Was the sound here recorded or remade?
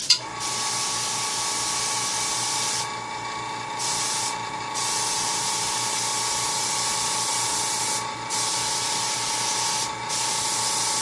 recorded